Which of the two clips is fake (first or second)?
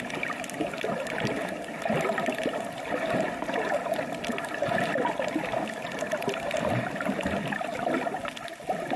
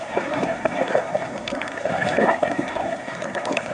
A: second